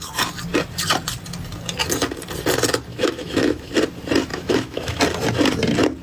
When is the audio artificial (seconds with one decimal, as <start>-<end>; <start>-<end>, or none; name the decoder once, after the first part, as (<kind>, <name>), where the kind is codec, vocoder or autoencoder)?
2.9-3.7 (autoencoder, DAC-VAE); 4.3-5.0